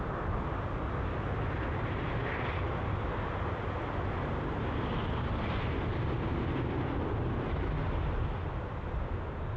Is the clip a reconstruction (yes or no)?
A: no